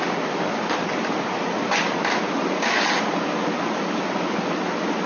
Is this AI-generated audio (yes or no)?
no